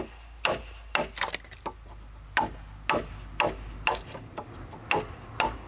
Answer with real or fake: real